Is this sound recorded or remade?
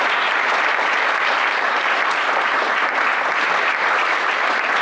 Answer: remade